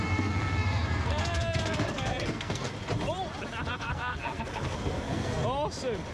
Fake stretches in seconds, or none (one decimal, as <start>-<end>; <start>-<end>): 0.0-2.7; 3.7-5.4